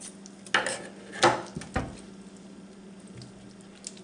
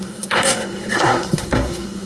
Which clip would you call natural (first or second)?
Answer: first